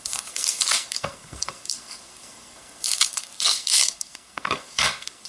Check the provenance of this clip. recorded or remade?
remade